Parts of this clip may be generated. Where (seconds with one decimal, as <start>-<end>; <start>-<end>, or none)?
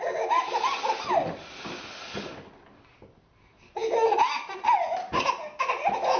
none